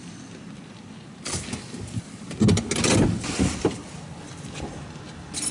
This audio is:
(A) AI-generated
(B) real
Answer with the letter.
B